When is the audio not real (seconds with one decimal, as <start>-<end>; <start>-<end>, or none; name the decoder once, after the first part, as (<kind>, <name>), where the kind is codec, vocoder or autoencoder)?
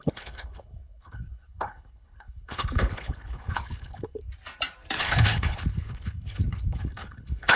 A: 0.0-4.2 (codec, HILCodec); 5.0-7.6